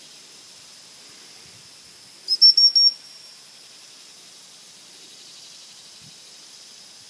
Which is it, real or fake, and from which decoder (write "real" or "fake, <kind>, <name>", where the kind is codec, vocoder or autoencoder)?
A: real